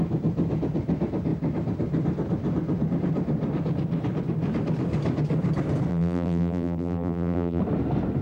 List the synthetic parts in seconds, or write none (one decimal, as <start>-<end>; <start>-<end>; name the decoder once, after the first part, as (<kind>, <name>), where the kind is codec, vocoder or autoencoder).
5.9-7.6 (vocoder, BigVGAN v2)